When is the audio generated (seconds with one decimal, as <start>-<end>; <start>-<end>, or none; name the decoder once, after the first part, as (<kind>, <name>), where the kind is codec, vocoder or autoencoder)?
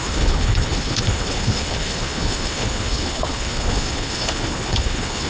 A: 0.0-5.3 (codec, HILCodec)